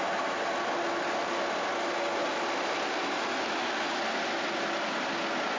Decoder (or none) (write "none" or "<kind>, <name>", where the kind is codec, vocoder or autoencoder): none